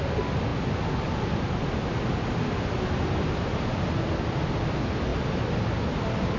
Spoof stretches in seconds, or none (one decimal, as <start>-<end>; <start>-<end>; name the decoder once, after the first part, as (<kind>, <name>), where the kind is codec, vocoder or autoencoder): 5.1-6.0 (vocoder, BigVGAN v2)